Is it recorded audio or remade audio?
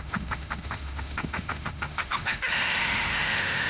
remade